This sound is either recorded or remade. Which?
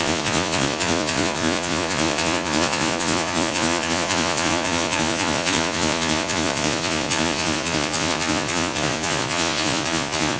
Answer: remade